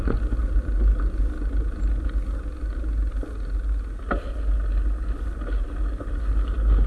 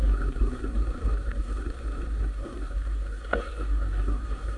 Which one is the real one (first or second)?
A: first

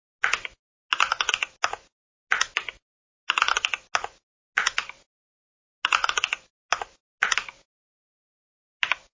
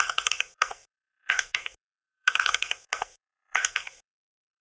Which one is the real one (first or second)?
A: first